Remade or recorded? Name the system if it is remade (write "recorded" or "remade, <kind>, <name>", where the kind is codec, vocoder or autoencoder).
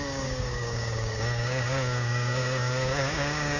remade, codec, DAC